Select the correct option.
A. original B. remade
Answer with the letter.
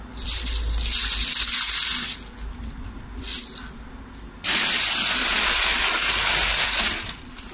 A